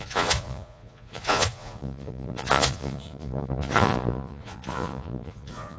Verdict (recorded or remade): remade